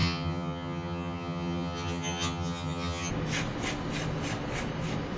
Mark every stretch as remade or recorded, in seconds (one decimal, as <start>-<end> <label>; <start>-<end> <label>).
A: 0.0-3.1 remade; 3.1-5.2 recorded